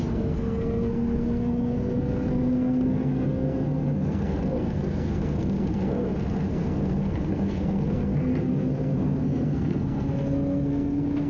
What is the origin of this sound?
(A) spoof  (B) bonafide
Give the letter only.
A